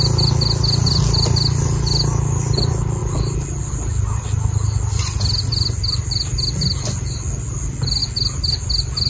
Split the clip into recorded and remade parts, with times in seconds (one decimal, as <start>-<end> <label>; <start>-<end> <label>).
0.0-9.1 recorded